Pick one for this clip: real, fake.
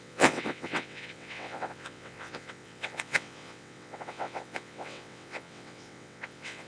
fake